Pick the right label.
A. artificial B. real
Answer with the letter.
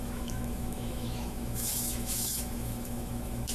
A